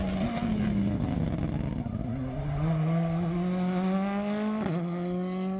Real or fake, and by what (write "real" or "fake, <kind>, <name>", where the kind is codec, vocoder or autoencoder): real